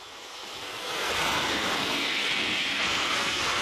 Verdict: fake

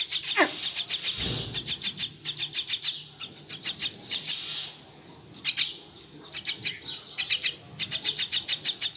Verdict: real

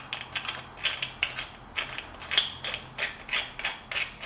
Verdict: real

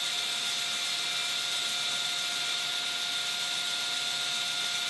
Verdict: real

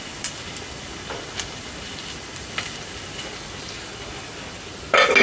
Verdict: real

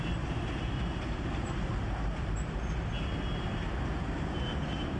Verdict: real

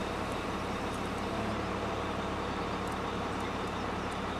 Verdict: fake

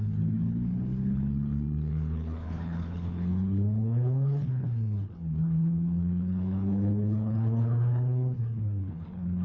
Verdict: fake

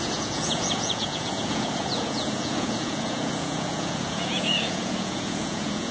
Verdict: fake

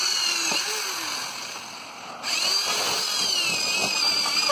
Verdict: real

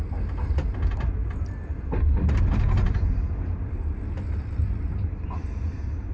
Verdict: real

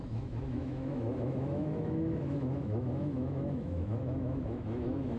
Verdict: fake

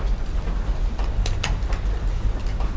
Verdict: real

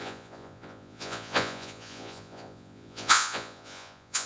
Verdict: fake